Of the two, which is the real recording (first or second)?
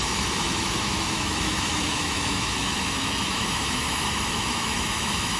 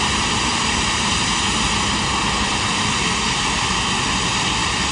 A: second